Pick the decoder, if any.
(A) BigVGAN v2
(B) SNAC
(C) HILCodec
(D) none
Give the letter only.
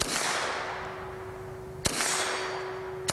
D